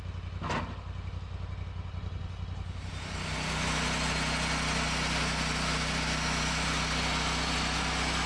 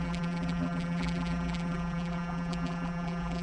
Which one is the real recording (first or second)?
first